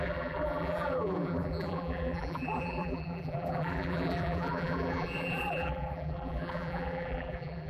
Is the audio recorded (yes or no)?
no